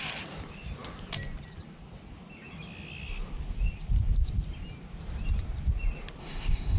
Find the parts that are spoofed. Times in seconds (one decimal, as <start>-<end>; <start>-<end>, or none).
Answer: 6.2-6.8